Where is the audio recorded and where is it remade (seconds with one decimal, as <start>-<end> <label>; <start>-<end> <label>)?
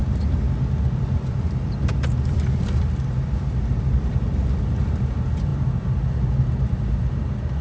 0.0-7.6 recorded